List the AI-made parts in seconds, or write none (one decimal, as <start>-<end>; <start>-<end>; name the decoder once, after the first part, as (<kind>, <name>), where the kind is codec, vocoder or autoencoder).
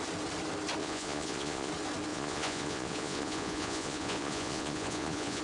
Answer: 0.8-1.7 (vocoder, Vocos); 2.1-5.4